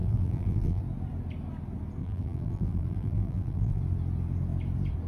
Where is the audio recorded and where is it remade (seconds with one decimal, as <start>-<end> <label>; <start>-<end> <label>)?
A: 0.0-0.8 remade; 0.8-2.0 recorded; 2.0-3.8 remade; 3.8-5.1 recorded